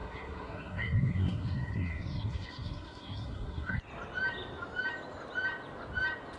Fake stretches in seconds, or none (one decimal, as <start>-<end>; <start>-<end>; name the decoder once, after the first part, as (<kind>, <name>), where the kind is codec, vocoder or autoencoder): 0.0-3.8 (codec, SNAC)